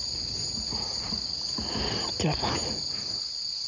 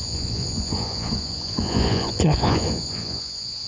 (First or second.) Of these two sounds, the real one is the first